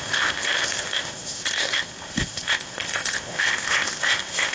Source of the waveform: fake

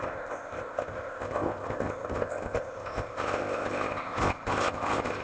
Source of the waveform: fake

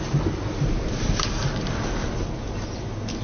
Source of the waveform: real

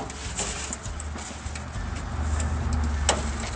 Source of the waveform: real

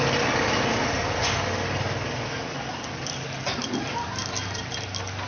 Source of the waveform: real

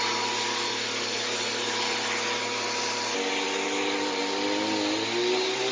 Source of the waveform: real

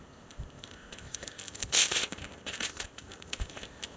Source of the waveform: fake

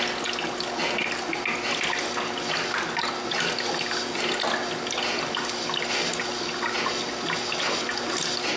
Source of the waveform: real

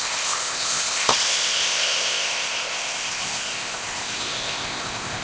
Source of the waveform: fake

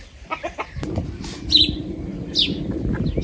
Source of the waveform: real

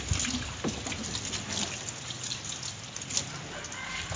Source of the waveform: real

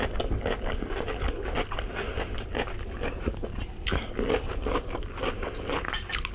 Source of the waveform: real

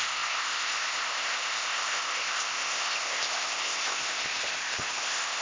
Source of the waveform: fake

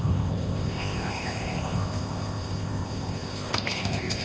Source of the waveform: fake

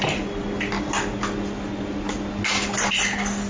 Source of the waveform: real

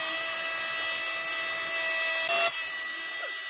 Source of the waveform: real